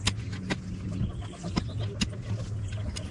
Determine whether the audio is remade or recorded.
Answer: recorded